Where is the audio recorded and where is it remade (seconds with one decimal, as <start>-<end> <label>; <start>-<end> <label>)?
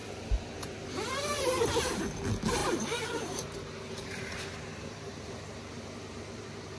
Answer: 0.0-2.0 remade; 2.0-2.6 recorded; 2.6-6.8 remade